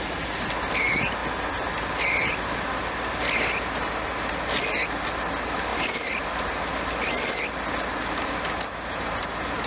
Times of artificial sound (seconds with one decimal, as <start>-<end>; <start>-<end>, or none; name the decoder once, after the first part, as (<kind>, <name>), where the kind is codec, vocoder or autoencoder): 5.7-6.7 (vocoder, BigVGAN v2)